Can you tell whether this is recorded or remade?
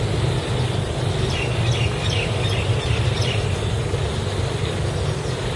recorded